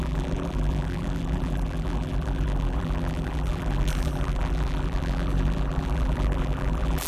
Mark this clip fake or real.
fake